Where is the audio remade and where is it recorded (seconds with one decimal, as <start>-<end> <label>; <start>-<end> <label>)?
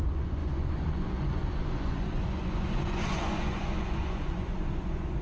0.0-5.2 remade